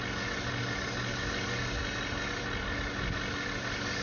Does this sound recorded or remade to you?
recorded